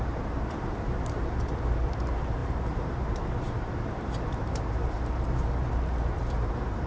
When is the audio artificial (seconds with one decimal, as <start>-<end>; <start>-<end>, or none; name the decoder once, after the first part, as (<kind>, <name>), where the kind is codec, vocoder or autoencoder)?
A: 0.0-6.9 (vocoder, BigVGAN v2)